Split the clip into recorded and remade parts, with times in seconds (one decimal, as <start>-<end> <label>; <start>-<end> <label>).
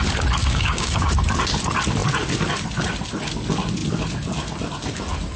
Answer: 0.0-0.4 recorded; 0.4-1.1 remade; 1.1-5.4 recorded